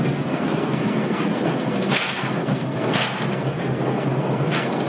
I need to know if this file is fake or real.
fake